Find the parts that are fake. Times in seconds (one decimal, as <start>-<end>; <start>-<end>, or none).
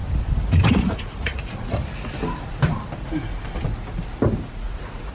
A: 0.5-1.8; 4.5-5.1